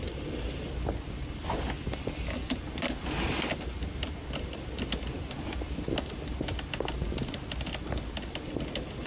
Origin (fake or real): real